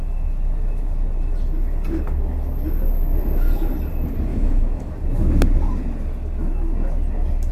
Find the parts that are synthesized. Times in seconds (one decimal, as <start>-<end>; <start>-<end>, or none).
4.3-4.9